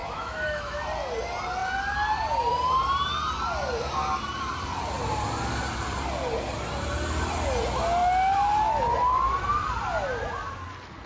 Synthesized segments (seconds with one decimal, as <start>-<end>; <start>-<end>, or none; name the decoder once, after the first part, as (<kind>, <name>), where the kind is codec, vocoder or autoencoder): 0.0-0.8 (autoencoder, DAC-VAE)